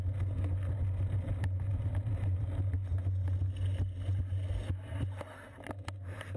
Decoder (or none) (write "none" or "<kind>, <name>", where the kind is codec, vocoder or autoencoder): none